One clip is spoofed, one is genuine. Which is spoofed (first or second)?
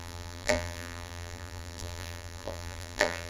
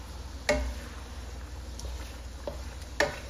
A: first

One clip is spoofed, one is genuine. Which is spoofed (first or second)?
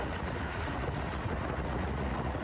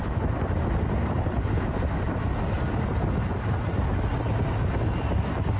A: first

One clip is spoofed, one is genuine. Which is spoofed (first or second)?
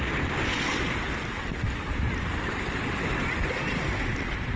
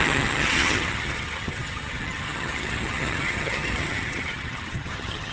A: second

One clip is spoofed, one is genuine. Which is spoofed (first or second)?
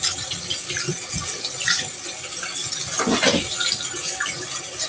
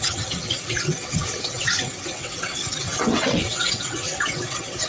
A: second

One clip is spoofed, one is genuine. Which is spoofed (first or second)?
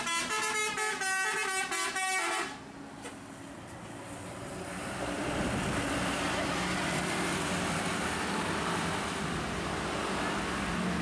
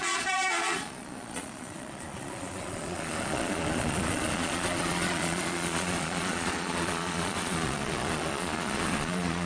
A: second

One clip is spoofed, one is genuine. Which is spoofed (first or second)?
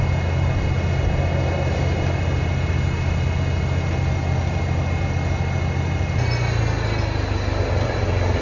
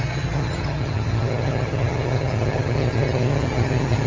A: second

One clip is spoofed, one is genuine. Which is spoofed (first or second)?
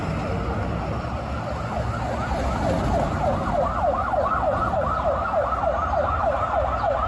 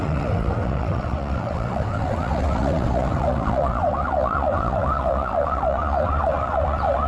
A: second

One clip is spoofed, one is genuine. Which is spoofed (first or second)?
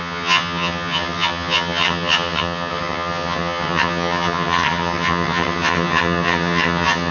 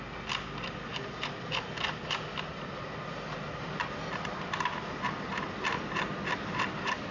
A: first